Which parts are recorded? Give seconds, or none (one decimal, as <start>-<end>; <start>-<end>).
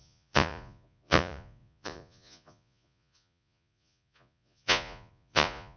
none